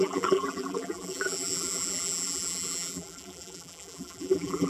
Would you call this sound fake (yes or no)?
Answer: yes